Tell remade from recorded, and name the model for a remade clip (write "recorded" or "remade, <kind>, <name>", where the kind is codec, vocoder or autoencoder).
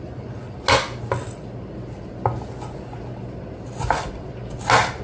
recorded